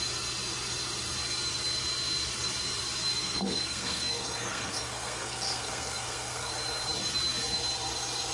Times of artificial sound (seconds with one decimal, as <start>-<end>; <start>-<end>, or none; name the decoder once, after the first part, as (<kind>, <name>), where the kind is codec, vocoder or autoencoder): 3.2-6.5 (codec, SNAC)